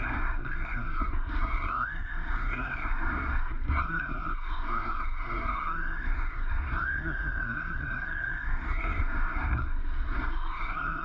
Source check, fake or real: fake